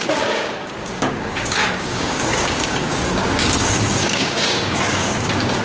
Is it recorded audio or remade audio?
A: remade